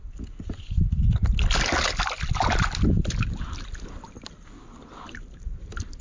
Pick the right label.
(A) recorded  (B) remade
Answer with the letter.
A